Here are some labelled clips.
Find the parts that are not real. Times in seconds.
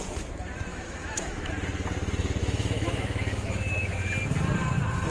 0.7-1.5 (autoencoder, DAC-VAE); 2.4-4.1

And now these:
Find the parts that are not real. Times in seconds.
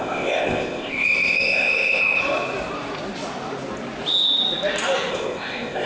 0.0-2.2 (codec, ZipCodec); 5.1-5.9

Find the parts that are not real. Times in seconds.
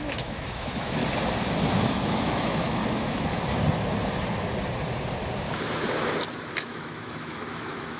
0.0-1.0 (autoencoder, DAC-VAE); 1.9-2.8; 6.5-8.0